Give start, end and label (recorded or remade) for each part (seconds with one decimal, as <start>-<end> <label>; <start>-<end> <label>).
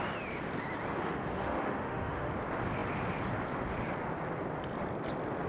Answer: 0.0-1.0 recorded; 1.0-2.3 remade; 2.3-5.5 recorded